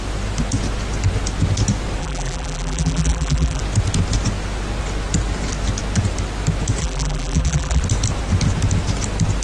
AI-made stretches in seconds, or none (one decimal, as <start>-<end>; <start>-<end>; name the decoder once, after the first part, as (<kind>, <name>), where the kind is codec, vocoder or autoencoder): 2.0-3.6 (vocoder, BigVGAN v2); 6.8-7.8